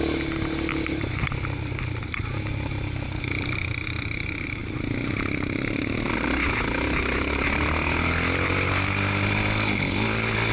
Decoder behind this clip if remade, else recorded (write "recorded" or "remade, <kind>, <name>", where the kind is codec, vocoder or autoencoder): recorded